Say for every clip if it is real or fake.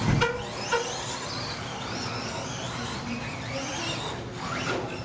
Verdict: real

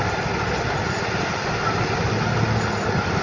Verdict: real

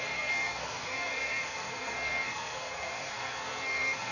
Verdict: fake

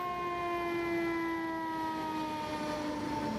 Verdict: real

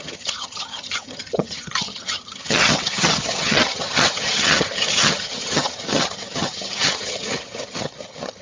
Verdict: fake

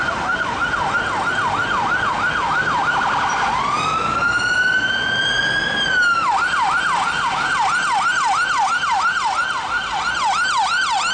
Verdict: real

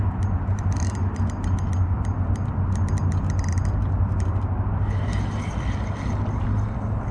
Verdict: real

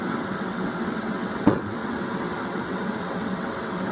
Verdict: fake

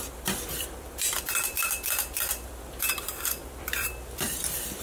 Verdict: fake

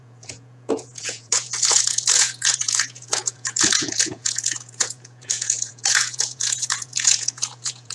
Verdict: fake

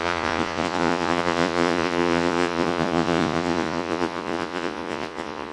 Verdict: fake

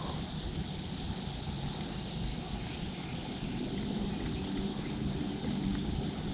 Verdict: real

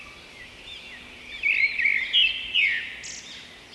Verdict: real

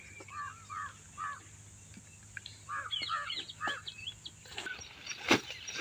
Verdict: real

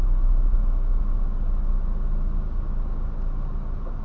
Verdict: real